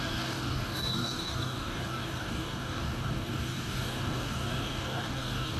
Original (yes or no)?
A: no